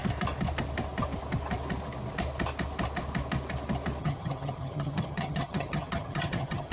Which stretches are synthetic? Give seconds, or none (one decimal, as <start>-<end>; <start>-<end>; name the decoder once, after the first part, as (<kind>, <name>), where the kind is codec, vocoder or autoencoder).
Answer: 4.0-6.7 (vocoder, HiFi-GAN)